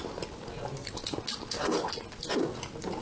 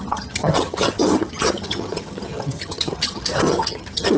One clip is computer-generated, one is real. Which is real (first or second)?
first